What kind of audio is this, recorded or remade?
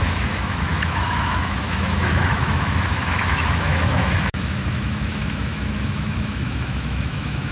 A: remade